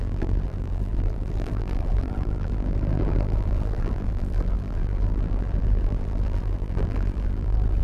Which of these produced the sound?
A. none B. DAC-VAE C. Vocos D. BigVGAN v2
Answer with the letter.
D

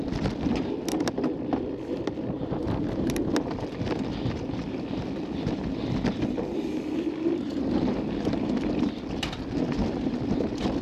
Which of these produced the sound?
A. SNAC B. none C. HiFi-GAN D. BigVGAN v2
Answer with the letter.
B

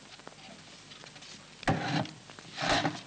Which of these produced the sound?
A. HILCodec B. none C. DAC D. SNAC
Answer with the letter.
B